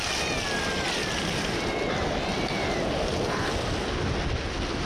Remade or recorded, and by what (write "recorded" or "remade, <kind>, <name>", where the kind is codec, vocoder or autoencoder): recorded